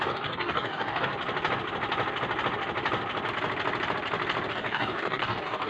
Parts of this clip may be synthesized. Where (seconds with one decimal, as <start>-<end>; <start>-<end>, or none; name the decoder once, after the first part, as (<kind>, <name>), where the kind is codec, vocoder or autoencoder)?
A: 0.0-1.1 (codec, DAC); 4.5-5.7